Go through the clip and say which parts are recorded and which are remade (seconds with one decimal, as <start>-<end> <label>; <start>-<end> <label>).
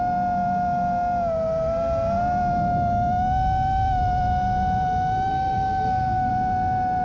0.0-5.3 recorded; 5.3-6.3 remade; 6.3-7.0 recorded